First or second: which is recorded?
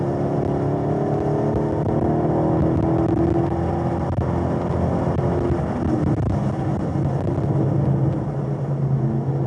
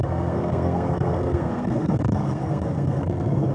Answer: first